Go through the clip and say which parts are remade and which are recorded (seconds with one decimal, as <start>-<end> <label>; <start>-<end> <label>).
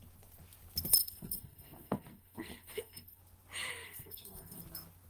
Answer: 0.0-1.0 recorded; 1.0-3.2 remade; 3.2-3.7 recorded; 3.7-4.6 remade; 4.6-5.1 recorded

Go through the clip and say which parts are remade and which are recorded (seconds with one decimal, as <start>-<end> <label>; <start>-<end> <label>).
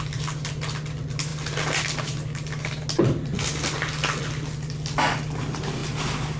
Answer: 0.0-6.4 recorded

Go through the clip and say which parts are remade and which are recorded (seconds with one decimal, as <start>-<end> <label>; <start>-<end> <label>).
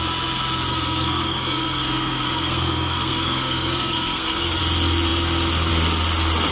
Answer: 0.0-0.7 recorded; 0.7-4.6 remade; 4.6-6.5 recorded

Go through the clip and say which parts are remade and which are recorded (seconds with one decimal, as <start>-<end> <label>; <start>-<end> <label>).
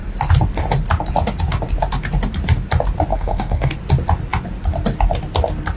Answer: 0.0-3.1 recorded; 3.1-3.7 remade; 3.7-5.8 recorded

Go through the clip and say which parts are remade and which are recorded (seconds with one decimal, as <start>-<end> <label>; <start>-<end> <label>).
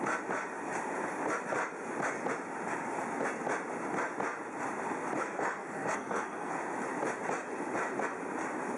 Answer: 0.0-5.2 recorded; 5.2-6.6 remade; 6.6-8.8 recorded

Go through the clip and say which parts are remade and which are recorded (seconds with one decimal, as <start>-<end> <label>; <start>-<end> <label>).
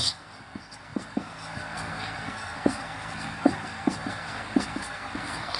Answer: 0.0-5.6 remade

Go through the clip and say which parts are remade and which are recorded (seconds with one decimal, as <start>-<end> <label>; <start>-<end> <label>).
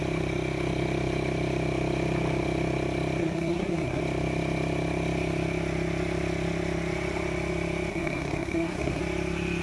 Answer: 0.0-3.2 recorded; 3.2-4.0 remade; 4.0-7.9 recorded; 7.9-9.0 remade; 9.0-9.6 recorded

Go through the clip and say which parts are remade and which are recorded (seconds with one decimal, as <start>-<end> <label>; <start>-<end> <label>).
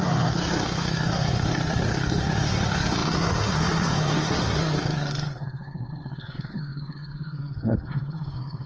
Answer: 0.0-8.7 remade